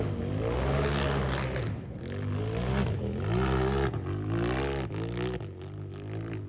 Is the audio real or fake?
real